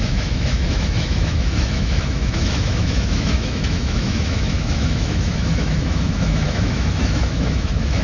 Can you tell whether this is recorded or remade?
remade